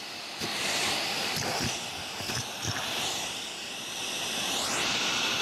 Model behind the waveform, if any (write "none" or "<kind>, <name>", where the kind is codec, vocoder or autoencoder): vocoder, BigVGAN v2